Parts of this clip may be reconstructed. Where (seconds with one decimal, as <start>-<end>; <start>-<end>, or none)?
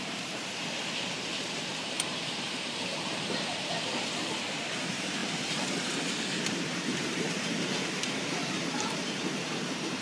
0.0-0.8; 1.4-5.2; 6.4-10.0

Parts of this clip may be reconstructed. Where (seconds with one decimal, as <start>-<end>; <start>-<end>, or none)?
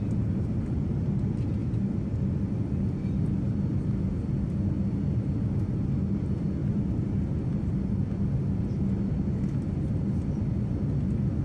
none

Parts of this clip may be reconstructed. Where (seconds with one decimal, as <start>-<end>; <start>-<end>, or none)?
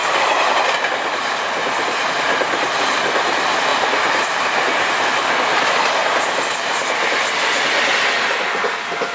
0.0-0.6; 3.7-4.9; 6.0-6.9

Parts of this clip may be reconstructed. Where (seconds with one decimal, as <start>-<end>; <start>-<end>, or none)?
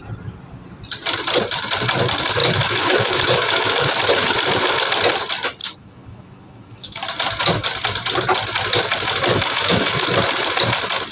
2.4-3.9; 5.6-7.0; 9.3-9.9